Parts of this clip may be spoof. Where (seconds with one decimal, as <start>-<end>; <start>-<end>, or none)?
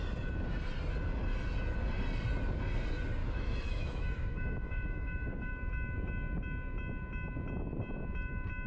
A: 3.2-5.5